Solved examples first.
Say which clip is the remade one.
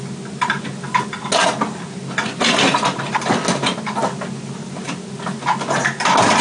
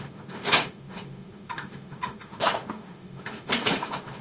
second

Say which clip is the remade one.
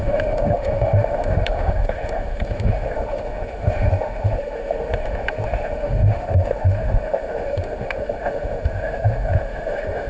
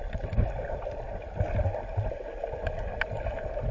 first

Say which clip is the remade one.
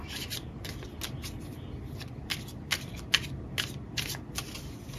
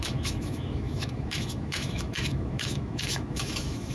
second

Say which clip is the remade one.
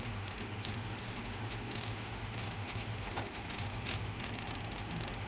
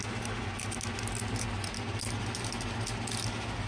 first